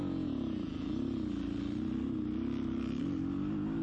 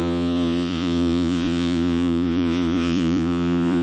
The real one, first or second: first